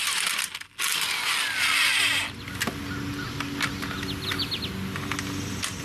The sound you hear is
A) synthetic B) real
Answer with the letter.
B